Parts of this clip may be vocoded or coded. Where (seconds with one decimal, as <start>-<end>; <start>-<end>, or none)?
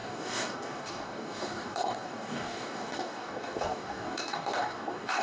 0.0-5.2